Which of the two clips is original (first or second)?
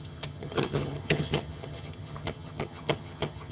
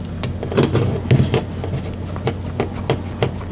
second